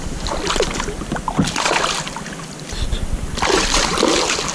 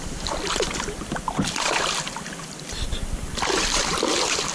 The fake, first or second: second